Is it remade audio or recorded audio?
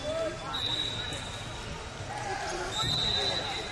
recorded